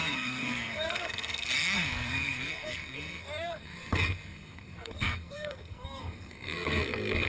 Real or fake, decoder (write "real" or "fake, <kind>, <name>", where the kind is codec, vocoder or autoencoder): fake, codec, SNAC